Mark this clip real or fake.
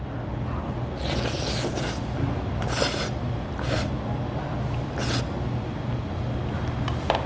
real